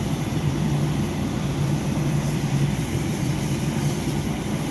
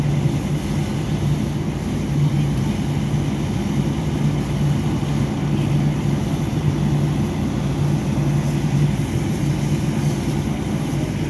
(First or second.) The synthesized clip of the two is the first